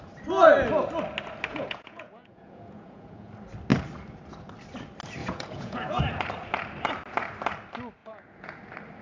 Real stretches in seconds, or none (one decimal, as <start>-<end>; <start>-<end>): 0.0-1.5; 3.3-5.2; 6.0-8.0; 8.6-9.0